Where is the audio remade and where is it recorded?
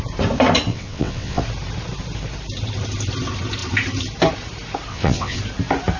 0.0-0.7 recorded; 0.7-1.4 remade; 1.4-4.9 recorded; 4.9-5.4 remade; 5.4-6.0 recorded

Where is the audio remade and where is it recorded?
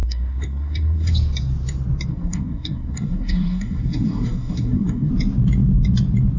0.0-1.1 remade; 1.1-2.1 recorded; 2.1-5.1 remade; 5.1-6.4 recorded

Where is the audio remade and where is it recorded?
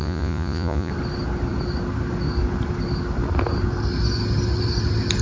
0.0-0.9 remade; 0.9-5.2 recorded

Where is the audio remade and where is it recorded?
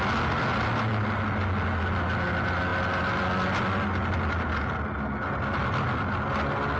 0.0-6.8 recorded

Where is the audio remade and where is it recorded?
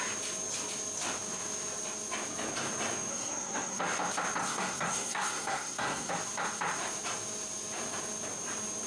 0.0-3.1 recorded; 3.1-3.8 remade; 3.8-4.4 recorded; 4.4-6.1 remade; 6.1-8.9 recorded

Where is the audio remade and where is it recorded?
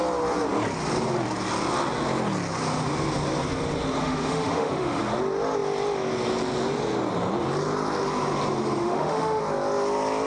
0.0-4.0 recorded; 4.0-5.0 remade; 5.0-8.8 recorded; 8.8-9.4 remade; 9.4-10.3 recorded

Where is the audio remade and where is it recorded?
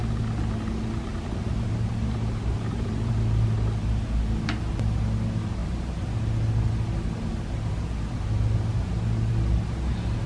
0.0-1.1 recorded; 1.1-3.1 remade; 3.1-10.3 recorded